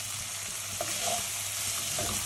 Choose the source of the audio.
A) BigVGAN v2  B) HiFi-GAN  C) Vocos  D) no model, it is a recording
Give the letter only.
D